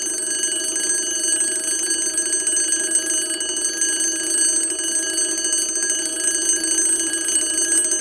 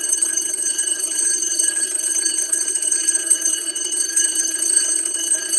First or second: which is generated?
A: second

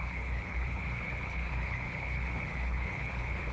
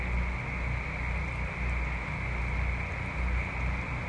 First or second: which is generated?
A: first